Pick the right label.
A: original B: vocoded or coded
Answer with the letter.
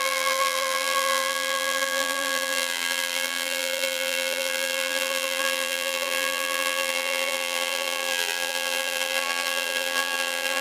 B